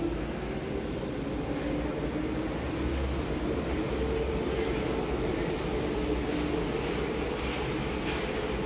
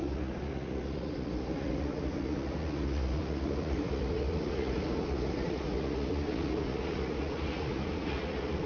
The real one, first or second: first